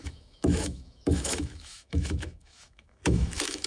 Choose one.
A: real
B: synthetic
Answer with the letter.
B